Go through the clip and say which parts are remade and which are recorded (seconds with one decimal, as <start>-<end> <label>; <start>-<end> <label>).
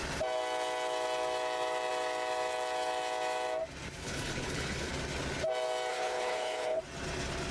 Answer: 0.0-4.0 recorded; 4.0-4.9 remade; 4.9-5.9 recorded; 5.9-6.8 remade; 6.8-7.5 recorded